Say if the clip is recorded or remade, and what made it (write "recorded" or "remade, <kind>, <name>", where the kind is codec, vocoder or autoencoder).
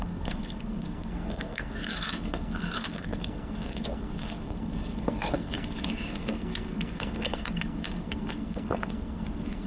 remade, codec, SNAC